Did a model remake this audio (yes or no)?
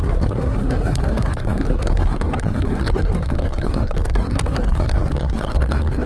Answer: yes